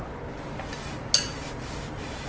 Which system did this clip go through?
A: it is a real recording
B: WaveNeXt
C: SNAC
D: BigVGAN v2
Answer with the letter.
A